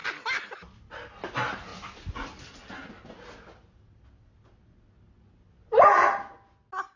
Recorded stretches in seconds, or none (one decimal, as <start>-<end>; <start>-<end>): 0.0-7.0

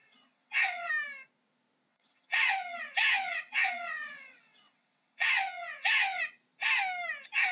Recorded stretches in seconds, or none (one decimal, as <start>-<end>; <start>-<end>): 0.9-1.9; 6.2-7.5

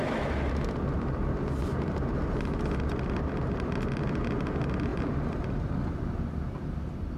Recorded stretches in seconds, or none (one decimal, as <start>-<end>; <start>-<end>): 0.0-1.6; 2.2-4.9; 5.7-7.2

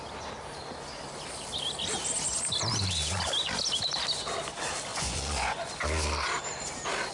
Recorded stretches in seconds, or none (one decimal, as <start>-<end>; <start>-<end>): 0.0-4.9; 5.7-7.1

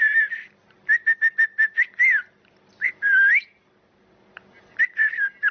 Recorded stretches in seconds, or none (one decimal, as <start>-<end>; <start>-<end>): 0.0-5.5

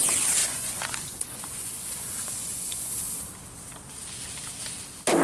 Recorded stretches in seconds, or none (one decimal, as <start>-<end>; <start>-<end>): 0.0-0.4; 2.9-5.2

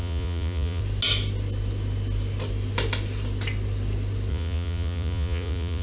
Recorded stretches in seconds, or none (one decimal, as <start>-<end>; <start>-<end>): 0.8-4.3